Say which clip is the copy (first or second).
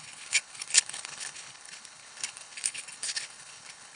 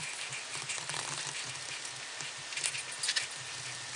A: first